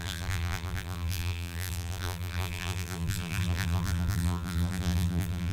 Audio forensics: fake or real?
fake